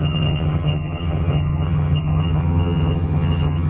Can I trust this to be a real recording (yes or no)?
no